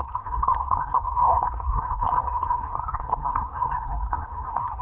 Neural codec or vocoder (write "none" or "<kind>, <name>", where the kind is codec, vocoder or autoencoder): codec, SNAC